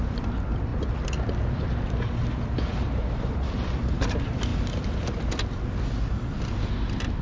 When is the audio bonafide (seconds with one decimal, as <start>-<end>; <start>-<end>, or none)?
0.0-0.7; 2.9-4.5; 5.4-7.2